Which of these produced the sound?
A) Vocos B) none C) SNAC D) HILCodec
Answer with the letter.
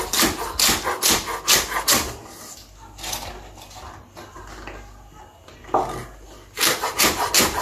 B